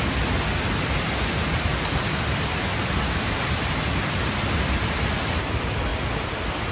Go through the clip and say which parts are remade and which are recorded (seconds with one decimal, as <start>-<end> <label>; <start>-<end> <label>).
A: 0.0-6.7 recorded